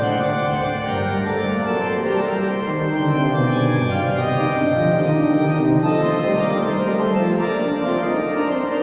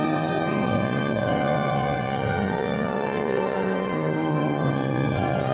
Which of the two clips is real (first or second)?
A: first